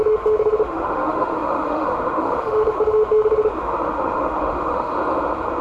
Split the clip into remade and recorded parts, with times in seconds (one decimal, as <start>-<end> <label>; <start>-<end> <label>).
0.0-4.9 remade; 4.9-5.6 recorded